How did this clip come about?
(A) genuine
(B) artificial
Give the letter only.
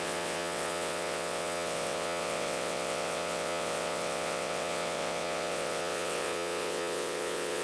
B